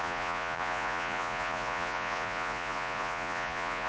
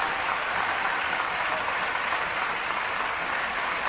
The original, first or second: second